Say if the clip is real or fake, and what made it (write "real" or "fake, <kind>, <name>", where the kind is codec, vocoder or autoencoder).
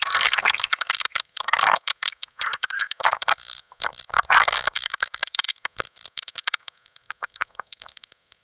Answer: fake, codec, SNAC